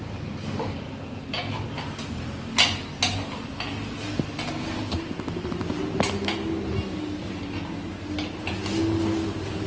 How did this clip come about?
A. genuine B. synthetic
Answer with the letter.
A